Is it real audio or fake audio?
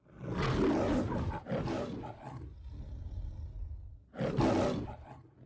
real